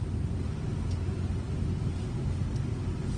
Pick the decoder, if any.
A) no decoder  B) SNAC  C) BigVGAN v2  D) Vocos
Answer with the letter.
A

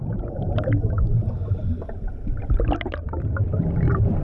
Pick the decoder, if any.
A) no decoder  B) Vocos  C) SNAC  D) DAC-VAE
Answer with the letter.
A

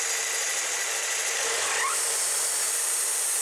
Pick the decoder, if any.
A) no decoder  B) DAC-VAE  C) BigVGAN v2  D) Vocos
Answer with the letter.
A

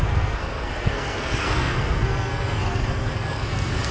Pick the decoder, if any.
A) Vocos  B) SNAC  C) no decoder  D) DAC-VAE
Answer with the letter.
B